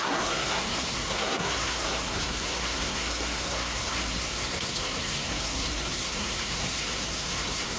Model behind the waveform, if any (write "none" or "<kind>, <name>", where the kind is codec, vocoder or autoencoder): codec, SNAC